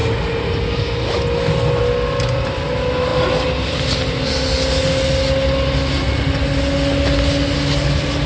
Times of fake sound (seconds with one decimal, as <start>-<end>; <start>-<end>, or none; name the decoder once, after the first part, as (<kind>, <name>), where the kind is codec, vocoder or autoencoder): none